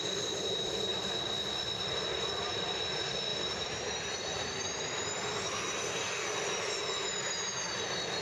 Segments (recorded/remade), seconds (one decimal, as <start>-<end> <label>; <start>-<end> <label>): 0.0-3.3 recorded; 3.3-5.4 remade; 5.4-8.2 recorded